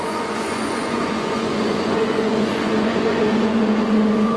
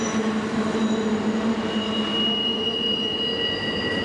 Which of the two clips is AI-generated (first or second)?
first